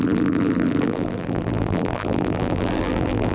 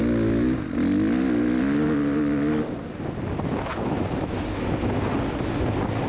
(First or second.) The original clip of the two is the second